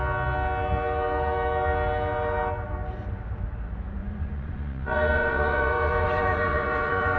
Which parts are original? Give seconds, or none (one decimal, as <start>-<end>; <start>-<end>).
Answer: 0.0-4.0